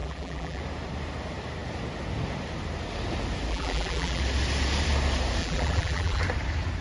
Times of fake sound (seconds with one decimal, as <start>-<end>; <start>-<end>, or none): 0.0-0.6; 3.5-4.2; 5.4-6.2